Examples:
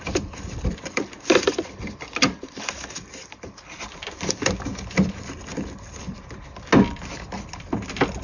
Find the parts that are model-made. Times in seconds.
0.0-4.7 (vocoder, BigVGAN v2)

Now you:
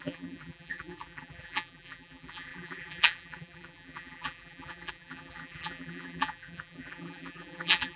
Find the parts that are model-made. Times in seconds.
0.0-8.0 (vocoder, BigVGAN v2)